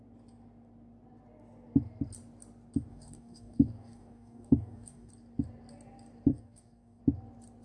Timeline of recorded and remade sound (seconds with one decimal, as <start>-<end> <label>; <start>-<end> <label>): 0.0-2.9 recorded; 2.9-5.1 remade; 5.1-6.3 recorded; 6.3-7.0 remade; 7.0-7.6 recorded